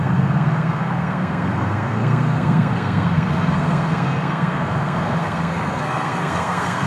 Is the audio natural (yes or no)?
no